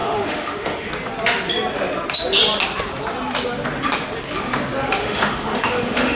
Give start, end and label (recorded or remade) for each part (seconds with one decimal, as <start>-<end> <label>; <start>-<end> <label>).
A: 0.0-0.9 remade; 0.9-5.0 recorded; 5.0-6.2 remade